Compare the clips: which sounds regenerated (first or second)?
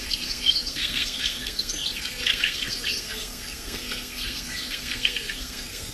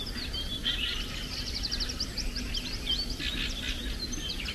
first